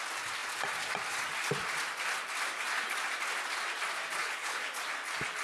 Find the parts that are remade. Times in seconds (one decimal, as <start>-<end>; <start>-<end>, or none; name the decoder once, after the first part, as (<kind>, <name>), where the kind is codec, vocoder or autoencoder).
4.2-4.7 (codec, HILCodec)